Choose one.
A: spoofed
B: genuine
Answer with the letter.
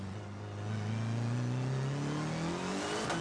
B